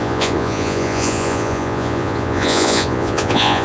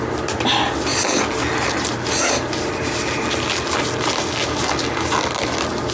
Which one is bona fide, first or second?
second